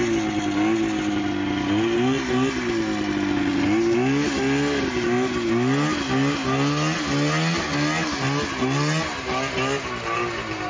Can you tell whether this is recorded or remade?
recorded